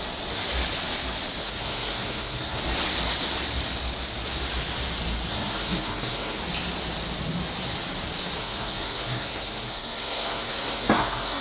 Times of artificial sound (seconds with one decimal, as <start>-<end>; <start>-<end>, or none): 1.4-2.6; 5.3-6.4; 8.4-11.4